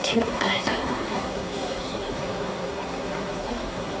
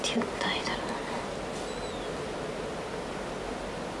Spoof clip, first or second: first